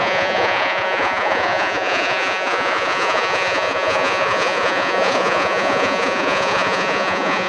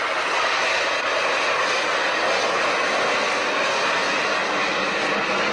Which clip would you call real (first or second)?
second